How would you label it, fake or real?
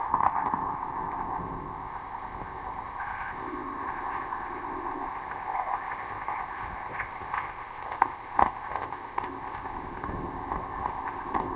fake